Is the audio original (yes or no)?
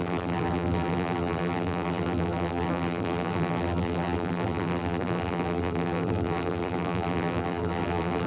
no